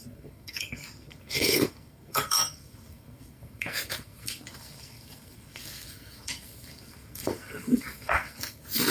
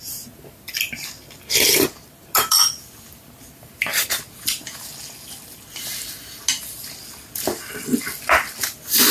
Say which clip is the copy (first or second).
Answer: first